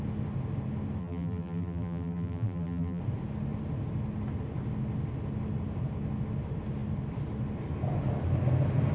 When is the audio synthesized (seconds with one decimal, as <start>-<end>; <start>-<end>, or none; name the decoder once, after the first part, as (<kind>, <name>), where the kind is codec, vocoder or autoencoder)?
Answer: 1.0-3.0 (vocoder, BigVGAN v2)